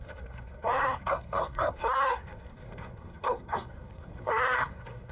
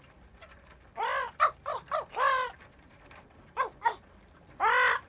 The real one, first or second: second